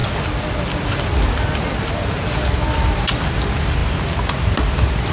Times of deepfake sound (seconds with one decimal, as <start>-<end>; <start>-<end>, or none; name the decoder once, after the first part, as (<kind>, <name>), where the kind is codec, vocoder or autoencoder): none

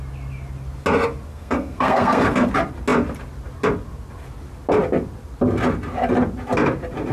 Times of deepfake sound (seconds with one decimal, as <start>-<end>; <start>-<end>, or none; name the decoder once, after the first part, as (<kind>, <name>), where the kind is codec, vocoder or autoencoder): 1.3-2.5 (codec, SNAC)

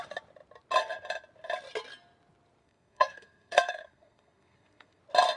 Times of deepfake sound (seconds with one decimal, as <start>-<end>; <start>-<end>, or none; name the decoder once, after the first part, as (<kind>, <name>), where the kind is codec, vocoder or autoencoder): 2.6-5.0 (codec, SNAC)

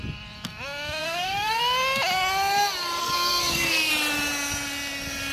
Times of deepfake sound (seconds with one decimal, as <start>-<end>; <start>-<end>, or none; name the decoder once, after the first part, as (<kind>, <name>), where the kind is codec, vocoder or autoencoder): 1.0-1.6 (codec, SNAC); 3.0-3.9

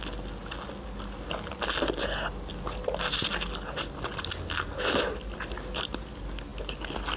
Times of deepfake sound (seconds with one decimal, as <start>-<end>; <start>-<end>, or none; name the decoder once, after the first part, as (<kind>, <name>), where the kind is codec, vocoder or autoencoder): none

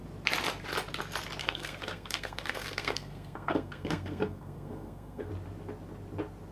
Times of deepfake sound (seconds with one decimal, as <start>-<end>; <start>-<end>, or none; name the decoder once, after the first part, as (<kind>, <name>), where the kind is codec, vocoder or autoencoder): 1.4-5.3 (codec, SNAC)

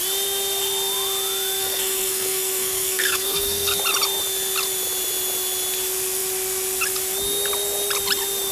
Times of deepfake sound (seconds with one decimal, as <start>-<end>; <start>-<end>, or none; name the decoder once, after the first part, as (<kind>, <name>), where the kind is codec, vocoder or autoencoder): 1.6-3.8 (codec, SNAC)